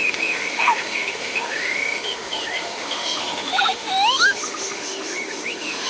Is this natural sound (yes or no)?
no